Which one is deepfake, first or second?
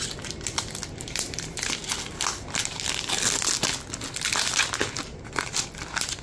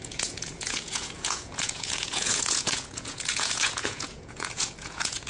second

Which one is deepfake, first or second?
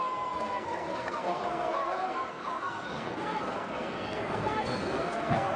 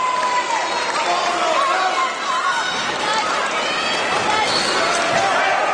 first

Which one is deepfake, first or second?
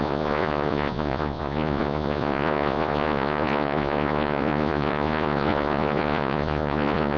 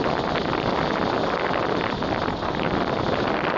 first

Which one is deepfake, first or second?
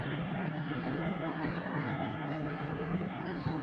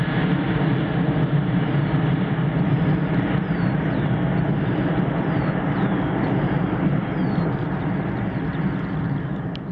first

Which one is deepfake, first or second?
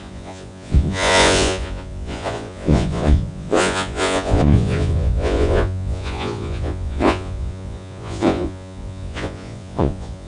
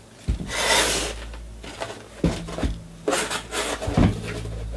first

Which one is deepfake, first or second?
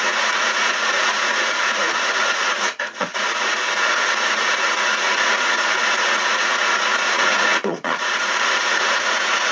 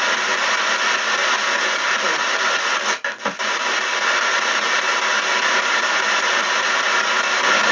first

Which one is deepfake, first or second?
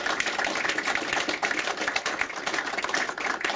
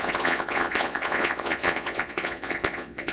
second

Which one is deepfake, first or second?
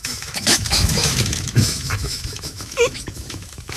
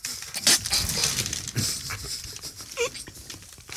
first